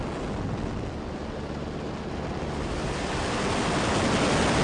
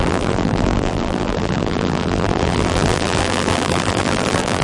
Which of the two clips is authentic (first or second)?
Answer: first